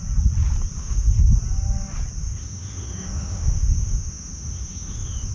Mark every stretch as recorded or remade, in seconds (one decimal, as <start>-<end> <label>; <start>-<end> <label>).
0.0-0.8 recorded; 0.8-1.4 remade; 1.4-2.2 recorded; 2.2-5.3 remade